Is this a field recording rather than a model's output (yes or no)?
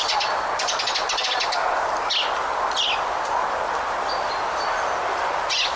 yes